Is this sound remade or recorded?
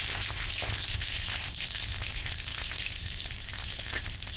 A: remade